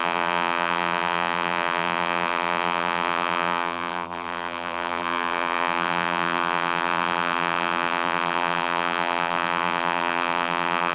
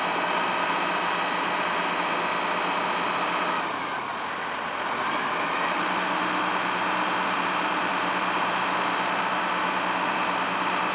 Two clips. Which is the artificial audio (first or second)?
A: first